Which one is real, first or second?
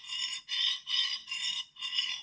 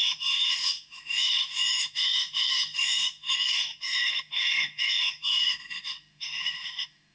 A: first